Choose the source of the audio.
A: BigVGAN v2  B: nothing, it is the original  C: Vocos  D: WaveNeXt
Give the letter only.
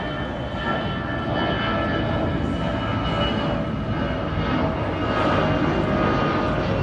B